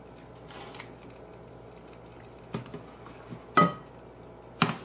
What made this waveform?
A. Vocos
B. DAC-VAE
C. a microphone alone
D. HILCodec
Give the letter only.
C